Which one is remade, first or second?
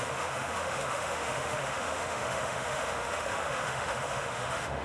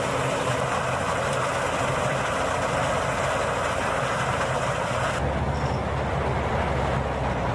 first